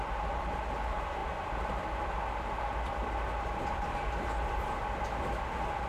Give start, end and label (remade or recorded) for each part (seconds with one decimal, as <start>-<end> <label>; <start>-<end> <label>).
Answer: 0.0-5.9 recorded